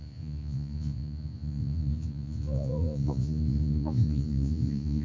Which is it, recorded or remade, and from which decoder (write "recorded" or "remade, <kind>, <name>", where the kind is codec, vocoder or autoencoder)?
remade, vocoder, Vocos